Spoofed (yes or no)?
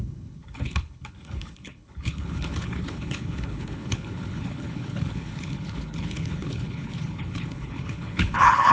yes